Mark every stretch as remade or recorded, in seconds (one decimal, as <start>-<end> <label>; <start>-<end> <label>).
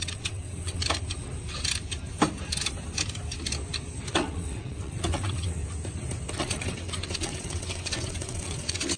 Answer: 0.0-0.8 remade; 0.8-4.1 recorded; 4.1-5.6 remade; 5.6-6.3 recorded; 6.3-9.0 remade